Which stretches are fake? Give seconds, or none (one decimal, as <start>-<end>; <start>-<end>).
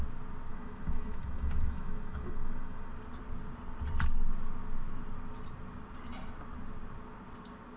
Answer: 0.5-2.9